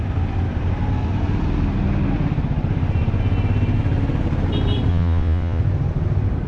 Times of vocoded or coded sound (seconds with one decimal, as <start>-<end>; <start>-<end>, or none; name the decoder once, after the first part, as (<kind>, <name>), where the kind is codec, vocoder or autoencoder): 4.9-5.6 (vocoder, Vocos)